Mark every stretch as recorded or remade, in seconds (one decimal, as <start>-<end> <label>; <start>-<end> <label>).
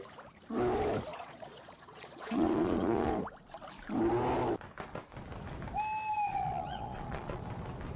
0.0-1.1 recorded; 1.1-3.1 remade; 3.1-6.3 recorded; 6.3-7.4 remade; 7.4-8.0 recorded